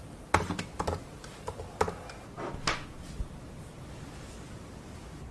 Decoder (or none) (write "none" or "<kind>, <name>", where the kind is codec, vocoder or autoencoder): none